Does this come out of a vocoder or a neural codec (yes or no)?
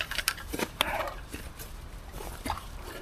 yes